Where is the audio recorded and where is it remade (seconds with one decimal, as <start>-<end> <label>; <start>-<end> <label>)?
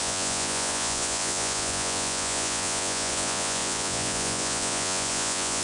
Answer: 0.0-5.6 remade